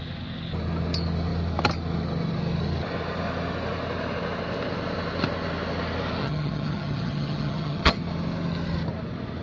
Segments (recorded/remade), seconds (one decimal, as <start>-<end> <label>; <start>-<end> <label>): 0.0-6.2 recorded; 6.2-8.0 remade; 8.0-9.4 recorded

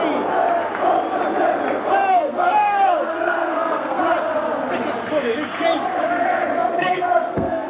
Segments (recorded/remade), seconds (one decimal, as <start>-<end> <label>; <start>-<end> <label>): 0.0-2.1 recorded; 2.1-4.0 remade; 4.0-6.7 recorded; 6.7-7.7 remade

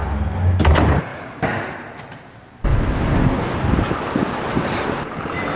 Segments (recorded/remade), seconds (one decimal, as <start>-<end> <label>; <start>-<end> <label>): 0.0-0.6 recorded; 0.6-1.1 remade; 1.1-2.1 recorded; 2.1-2.7 remade; 2.7-4.4 recorded; 4.4-5.6 remade